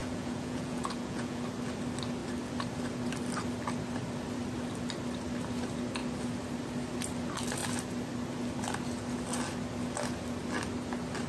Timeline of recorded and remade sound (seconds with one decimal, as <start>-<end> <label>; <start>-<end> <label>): 0.0-1.4 remade; 1.4-11.3 recorded